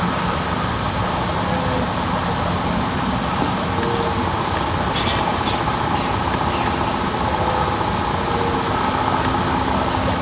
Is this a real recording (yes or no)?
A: yes